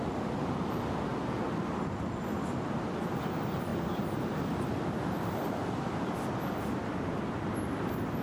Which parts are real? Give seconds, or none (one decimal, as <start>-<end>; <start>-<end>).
1.1-1.6